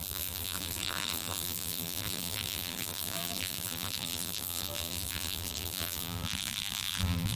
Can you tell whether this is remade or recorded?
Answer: remade